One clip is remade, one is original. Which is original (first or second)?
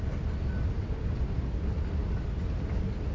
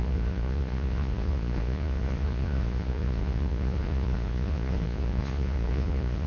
first